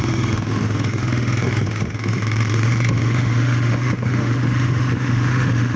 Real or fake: fake